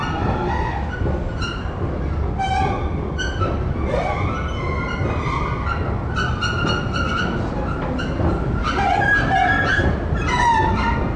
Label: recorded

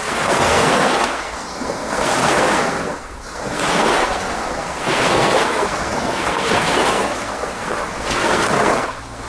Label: remade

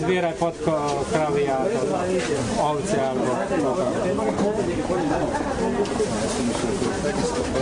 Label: recorded